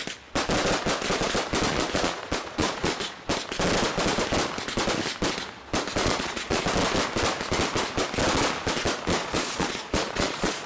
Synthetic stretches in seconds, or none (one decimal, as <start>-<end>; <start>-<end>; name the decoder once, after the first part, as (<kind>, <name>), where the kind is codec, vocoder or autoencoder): 1.7-3.2 (vocoder, Vocos); 6.0-6.6; 9.2-10.7